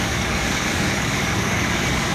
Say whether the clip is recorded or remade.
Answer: remade